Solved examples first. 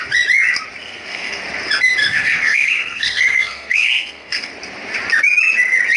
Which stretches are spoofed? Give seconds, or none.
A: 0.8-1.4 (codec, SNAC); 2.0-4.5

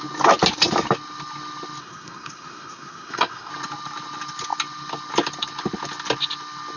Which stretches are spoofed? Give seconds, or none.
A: 1.8-3.5 (codec, SNAC)

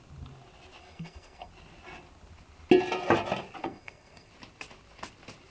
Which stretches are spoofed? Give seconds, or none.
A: 0.8-1.5 (codec, SNAC); 3.6-4.3

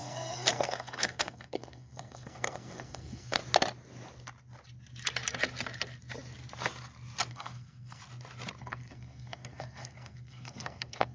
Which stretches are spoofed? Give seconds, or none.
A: 0.0-3.4 (codec, SNAC); 7.3-8.0; 8.6-11.1

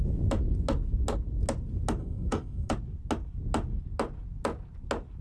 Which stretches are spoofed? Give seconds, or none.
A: 2.0-2.7 (codec, SNAC)